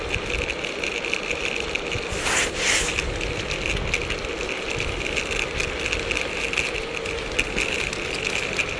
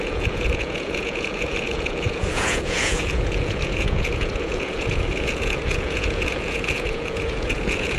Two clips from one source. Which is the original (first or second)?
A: first